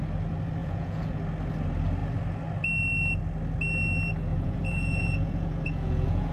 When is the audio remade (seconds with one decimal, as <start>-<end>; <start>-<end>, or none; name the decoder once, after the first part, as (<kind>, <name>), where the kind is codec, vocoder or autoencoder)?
0.6-1.2 (vocoder, Vocos); 4.3-6.3